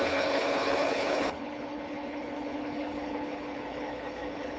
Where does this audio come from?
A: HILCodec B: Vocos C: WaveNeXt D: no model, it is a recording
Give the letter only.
A